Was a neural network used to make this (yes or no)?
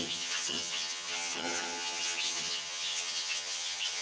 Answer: yes